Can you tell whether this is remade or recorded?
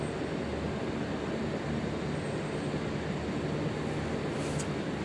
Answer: recorded